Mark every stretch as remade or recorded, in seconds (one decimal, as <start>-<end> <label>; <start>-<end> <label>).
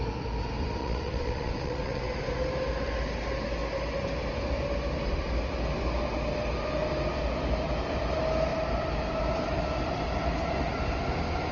0.0-0.8 recorded; 0.8-2.0 remade; 2.0-11.5 recorded